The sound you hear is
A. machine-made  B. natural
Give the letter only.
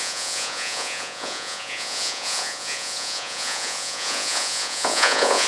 A